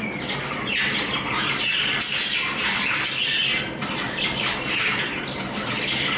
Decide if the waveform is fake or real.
real